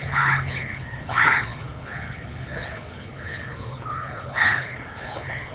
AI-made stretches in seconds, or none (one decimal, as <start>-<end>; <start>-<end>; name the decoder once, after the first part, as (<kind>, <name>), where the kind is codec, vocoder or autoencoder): 0.0-5.5 (codec, HILCodec)

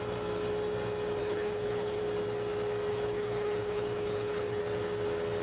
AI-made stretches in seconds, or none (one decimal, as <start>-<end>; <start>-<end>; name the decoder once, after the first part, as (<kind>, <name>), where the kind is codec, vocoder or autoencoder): 1.2-2.0 (codec, HILCodec); 2.9-4.6

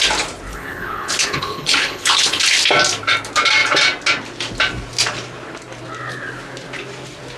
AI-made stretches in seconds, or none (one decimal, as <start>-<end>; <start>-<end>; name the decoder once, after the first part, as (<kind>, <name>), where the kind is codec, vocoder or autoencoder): 0.5-2.4 (codec, HILCodec)